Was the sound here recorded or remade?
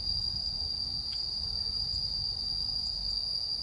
recorded